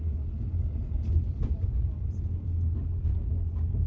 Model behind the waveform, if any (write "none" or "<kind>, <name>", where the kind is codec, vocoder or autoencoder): none